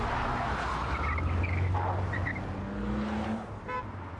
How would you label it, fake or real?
real